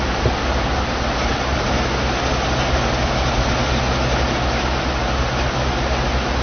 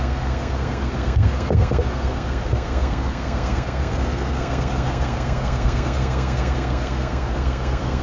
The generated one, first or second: second